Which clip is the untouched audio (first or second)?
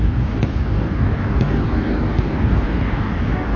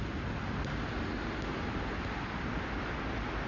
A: second